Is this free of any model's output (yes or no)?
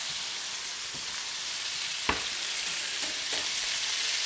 no